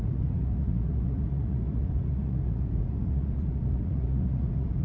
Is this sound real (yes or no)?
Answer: no